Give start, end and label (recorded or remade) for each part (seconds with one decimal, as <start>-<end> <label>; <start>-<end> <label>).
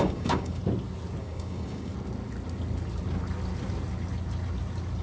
0.0-0.6 remade; 0.6-1.2 recorded; 1.2-1.9 remade; 1.9-5.0 recorded